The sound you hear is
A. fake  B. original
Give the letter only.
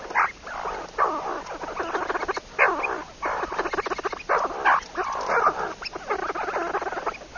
B